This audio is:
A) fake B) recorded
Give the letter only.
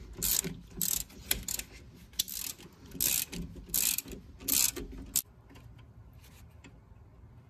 B